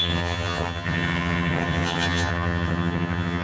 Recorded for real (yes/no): no